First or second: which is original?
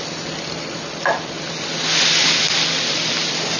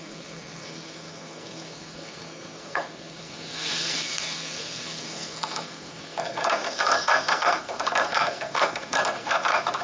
first